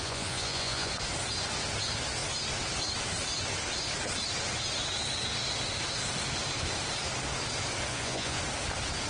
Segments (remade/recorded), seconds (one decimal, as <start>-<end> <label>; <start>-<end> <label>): 0.0-0.9 remade; 0.9-7.9 recorded; 7.9-8.4 remade; 8.4-9.1 recorded